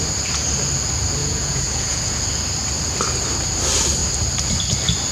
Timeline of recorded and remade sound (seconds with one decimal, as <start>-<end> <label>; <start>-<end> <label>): 0.0-1.2 recorded; 1.2-2.2 remade; 2.2-5.1 recorded